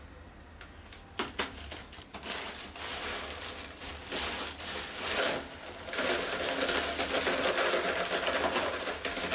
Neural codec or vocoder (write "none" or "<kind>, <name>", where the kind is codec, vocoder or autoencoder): none